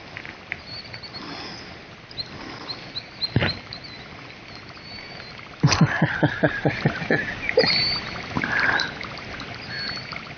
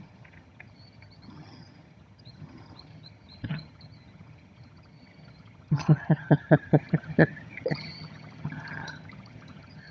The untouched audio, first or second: first